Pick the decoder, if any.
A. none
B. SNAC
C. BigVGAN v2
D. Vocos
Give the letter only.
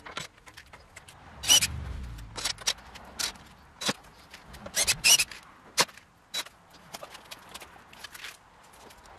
A